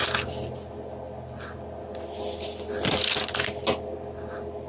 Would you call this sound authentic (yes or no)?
yes